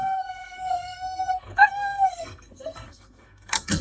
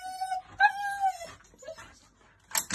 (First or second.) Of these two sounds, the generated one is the first